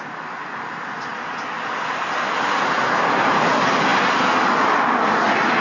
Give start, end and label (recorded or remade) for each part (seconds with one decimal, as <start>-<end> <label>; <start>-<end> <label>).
0.0-5.6 recorded

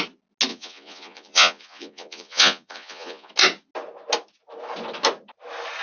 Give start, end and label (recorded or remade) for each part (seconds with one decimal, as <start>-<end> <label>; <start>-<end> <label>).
0.0-0.5 recorded; 0.5-3.3 remade; 3.3-5.8 recorded

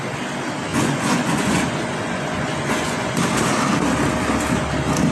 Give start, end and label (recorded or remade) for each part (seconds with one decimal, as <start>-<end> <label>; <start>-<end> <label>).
0.0-0.7 recorded; 0.7-3.2 remade; 3.2-5.1 recorded

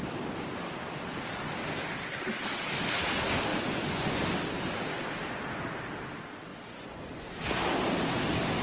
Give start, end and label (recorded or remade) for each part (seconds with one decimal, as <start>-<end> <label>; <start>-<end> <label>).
0.0-3.5 recorded; 3.5-4.3 remade; 4.3-6.5 recorded; 6.5-7.4 remade; 7.4-8.6 recorded